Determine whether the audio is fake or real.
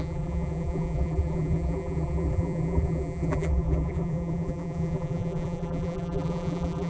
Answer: fake